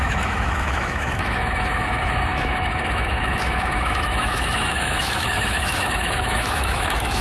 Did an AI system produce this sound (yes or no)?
yes